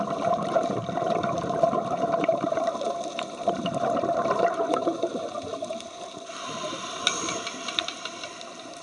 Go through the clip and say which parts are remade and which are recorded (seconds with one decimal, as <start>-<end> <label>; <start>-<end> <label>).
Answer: 0.0-8.8 remade